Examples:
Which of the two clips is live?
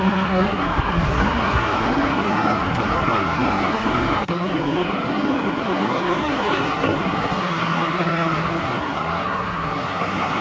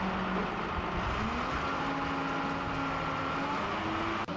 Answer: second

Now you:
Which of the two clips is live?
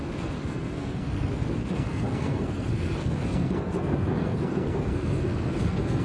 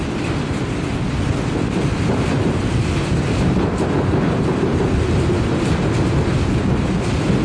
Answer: second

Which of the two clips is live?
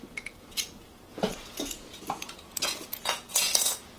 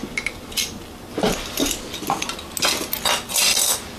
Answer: second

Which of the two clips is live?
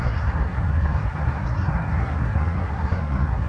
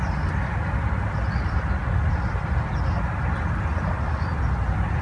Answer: second